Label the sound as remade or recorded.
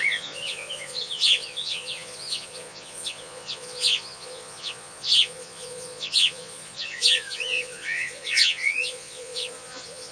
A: remade